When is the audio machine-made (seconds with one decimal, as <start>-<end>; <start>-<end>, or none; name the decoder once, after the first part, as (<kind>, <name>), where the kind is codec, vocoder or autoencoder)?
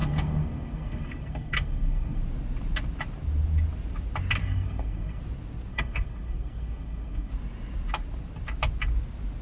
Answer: 0.0-2.2 (codec, SNAC); 4.4-5.2; 5.7-7.3